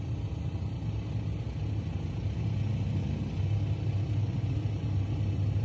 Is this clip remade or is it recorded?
recorded